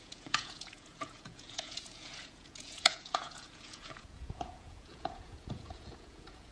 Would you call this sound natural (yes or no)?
no